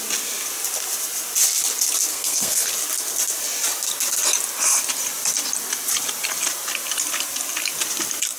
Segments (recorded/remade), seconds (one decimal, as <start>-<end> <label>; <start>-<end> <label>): 0.0-2.1 recorded; 2.1-2.7 remade; 2.7-8.4 recorded